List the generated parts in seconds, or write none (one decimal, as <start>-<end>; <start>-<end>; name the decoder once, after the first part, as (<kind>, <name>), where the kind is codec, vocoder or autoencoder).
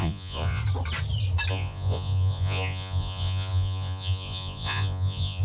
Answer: 0.0-0.6 (vocoder, Vocos); 1.5-5.4